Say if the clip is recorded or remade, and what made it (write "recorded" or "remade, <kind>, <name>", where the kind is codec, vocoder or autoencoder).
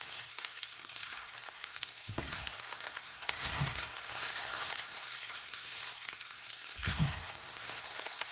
remade, codec, SNAC